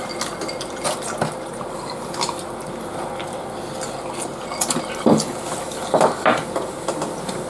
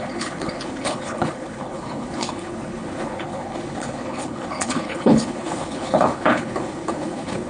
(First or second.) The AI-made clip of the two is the second